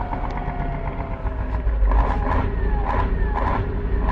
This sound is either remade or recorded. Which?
recorded